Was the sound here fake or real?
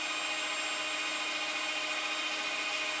real